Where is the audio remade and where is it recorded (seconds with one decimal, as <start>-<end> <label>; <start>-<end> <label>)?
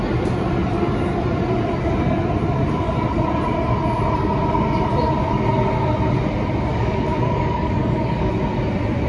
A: 0.0-6.7 recorded; 6.7-8.3 remade; 8.3-9.1 recorded